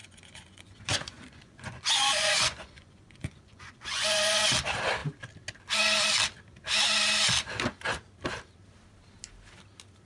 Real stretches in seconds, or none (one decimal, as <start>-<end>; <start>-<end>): 4.4-10.1